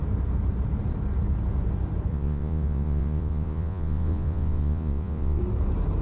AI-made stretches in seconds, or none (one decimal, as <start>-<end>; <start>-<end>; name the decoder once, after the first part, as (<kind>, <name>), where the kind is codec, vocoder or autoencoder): 2.1-5.4 (vocoder, Vocos)